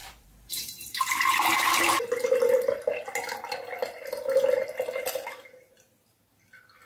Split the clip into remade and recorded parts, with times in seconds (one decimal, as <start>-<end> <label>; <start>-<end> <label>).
0.0-1.0 remade; 1.0-6.9 recorded